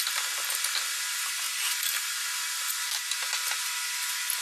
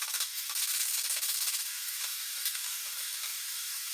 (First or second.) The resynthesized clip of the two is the second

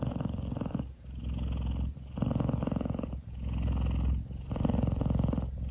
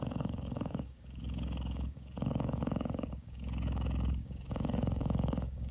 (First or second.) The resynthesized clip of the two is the second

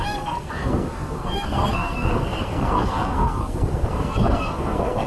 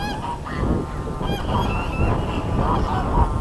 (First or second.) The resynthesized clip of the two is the first